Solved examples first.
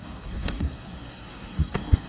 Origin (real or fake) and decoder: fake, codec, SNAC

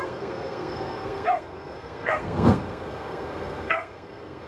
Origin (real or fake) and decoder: fake, codec, SNAC